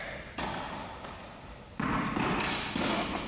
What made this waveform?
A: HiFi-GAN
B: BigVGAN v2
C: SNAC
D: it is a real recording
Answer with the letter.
D